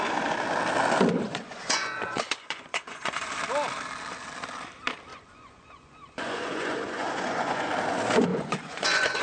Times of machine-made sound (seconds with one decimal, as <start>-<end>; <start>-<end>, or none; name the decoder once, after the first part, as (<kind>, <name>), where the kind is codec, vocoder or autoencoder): 1.3-3.3 (vocoder, Vocos); 5.1-7.7; 8.3-9.2

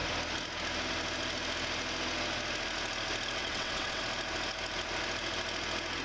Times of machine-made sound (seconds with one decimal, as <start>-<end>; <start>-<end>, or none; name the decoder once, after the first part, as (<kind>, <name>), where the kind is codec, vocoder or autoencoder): 3.4-4.0 (vocoder, WaveNeXt)

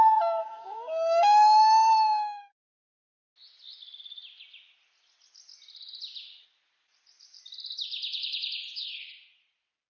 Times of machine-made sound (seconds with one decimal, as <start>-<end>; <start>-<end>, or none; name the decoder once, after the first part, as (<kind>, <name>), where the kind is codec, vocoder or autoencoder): 0.4-3.1 (codec, SNAC)

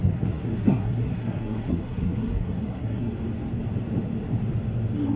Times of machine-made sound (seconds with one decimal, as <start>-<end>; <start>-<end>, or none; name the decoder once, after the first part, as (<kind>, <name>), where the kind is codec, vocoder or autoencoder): 0.0-3.1 (codec, SNAC)

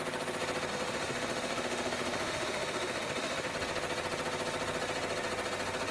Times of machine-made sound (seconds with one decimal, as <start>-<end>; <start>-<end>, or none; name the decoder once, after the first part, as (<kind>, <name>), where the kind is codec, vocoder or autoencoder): 0.7-3.5 (autoencoder, DAC-VAE)